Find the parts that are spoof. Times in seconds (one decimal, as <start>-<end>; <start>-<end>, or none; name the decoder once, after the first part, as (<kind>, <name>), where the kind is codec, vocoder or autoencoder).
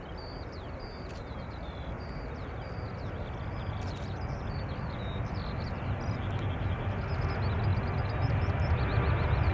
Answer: none